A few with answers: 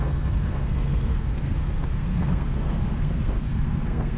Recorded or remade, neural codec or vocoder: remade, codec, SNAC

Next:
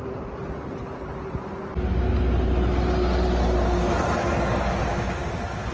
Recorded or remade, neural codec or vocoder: recorded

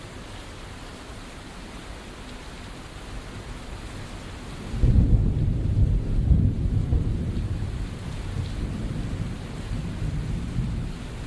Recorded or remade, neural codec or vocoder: recorded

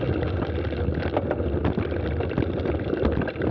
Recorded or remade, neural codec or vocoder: recorded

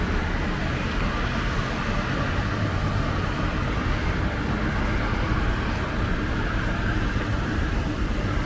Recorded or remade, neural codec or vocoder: recorded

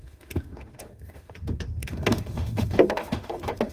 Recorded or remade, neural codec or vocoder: remade, autoencoder, DAC-VAE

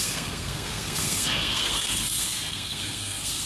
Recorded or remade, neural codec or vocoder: remade, codec, SNAC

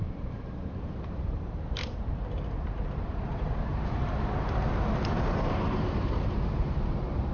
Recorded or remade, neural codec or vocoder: remade, vocoder, BigVGAN v2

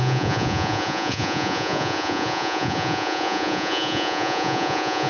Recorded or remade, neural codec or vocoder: remade, vocoder, Vocos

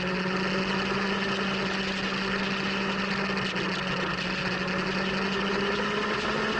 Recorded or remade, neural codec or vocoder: recorded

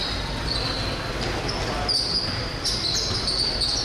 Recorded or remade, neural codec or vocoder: recorded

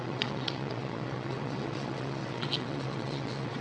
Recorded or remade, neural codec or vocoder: remade, vocoder, WaveNeXt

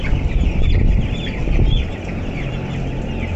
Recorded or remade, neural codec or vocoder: remade, vocoder, BigVGAN v2